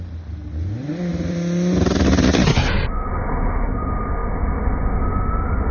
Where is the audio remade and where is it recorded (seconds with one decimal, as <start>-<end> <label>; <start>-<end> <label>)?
0.0-1.1 recorded; 1.1-2.6 remade; 2.6-5.7 recorded